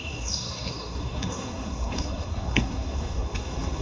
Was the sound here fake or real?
fake